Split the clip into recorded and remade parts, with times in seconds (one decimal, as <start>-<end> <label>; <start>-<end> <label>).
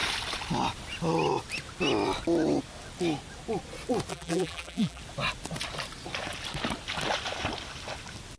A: 0.0-4.1 recorded; 4.1-5.0 remade; 5.0-8.4 recorded